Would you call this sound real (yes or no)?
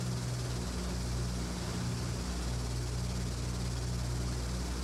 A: yes